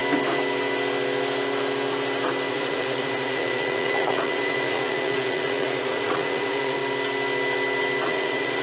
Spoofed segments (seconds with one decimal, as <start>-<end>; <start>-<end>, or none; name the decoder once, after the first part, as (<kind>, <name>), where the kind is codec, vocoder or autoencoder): 2.5-6.8 (vocoder, Vocos); 8.1-8.6

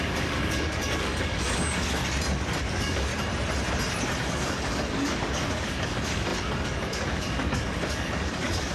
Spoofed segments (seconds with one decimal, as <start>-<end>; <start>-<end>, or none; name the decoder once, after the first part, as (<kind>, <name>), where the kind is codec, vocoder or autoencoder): 0.0-2.0 (codec, DAC); 2.6-3.1; 4.2-8.7

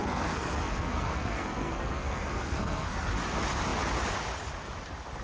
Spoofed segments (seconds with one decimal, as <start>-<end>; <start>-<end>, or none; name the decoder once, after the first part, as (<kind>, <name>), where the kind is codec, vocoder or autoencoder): 0.0-3.1 (codec, SNAC)

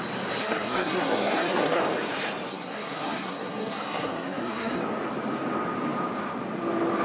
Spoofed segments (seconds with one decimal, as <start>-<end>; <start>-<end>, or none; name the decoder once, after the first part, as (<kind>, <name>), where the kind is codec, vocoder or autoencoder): 0.4-1.8 (codec, SNAC); 2.5-4.8

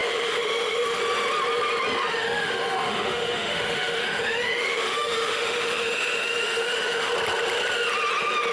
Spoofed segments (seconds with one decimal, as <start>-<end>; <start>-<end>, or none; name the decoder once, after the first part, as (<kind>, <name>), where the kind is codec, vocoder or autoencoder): 0.0-1.0 (autoencoder, DAC-VAE); 2.1-7.1